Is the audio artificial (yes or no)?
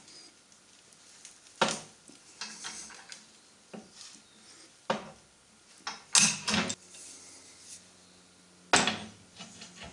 no